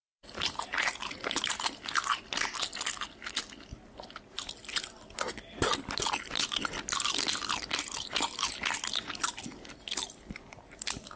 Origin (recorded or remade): recorded